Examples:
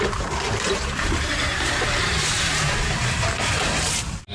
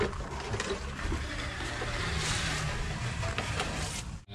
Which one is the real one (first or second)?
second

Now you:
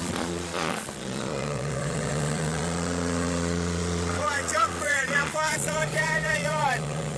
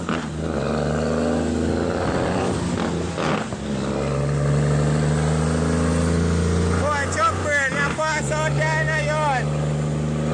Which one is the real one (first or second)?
second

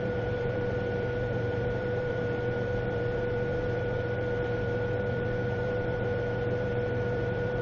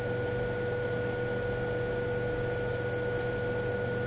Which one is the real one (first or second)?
second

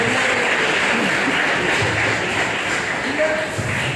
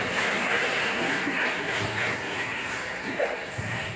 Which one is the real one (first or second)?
first